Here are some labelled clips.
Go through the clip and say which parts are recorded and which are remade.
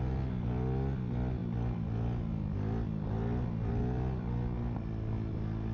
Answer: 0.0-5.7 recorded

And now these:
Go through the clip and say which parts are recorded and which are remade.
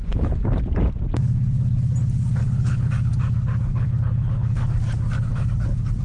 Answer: 0.0-0.6 remade; 0.6-2.4 recorded; 2.4-2.9 remade; 2.9-3.7 recorded; 3.7-4.6 remade; 4.6-6.0 recorded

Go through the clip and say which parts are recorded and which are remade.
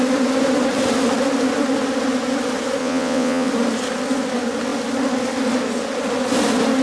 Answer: 0.0-2.8 recorded; 2.8-3.5 remade; 3.5-6.8 recorded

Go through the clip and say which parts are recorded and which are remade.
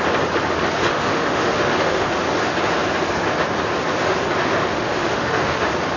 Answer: 0.0-0.9 recorded; 0.9-2.1 remade; 2.1-4.4 recorded; 4.4-5.6 remade; 5.6-6.0 recorded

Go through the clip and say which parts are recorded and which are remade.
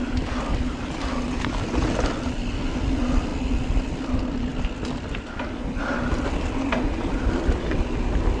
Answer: 0.0-8.4 recorded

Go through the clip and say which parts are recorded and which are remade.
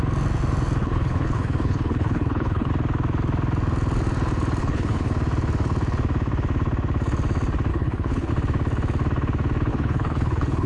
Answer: 0.0-0.8 recorded; 0.8-2.7 remade; 2.7-4.6 recorded; 4.6-5.1 remade; 5.1-7.7 recorded; 7.7-8.3 remade; 8.3-9.7 recorded; 9.7-10.7 remade